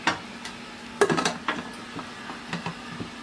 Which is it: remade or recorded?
recorded